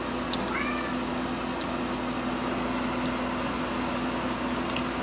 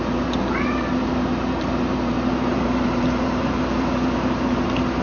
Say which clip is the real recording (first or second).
first